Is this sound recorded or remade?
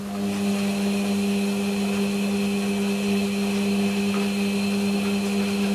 recorded